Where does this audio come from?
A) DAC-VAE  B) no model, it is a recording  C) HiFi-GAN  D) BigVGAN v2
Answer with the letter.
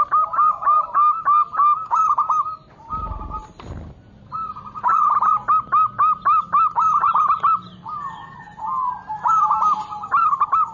B